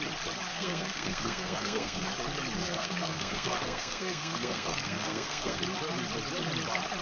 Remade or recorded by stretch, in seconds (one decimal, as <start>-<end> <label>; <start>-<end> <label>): 0.0-0.5 recorded; 0.5-2.1 remade; 2.1-2.6 recorded; 2.6-5.6 remade; 5.6-7.0 recorded